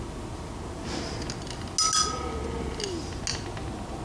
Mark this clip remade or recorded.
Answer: recorded